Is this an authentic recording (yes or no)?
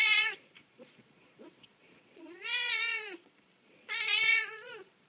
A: no